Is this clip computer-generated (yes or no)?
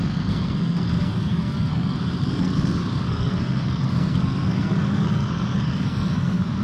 yes